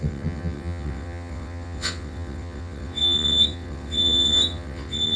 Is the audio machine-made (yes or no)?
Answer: yes